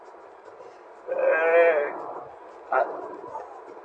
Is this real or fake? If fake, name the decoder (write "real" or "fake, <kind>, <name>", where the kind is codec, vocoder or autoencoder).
real